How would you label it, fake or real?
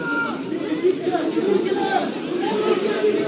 fake